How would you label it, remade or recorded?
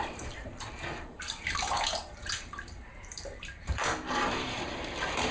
remade